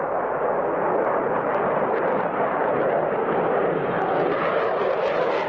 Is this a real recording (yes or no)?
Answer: yes